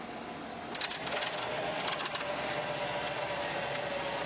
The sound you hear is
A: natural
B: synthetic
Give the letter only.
A